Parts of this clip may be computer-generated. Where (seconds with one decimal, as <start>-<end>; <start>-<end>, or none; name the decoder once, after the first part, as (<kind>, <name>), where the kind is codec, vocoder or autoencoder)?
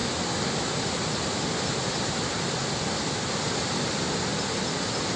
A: none